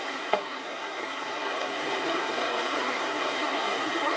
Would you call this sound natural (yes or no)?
no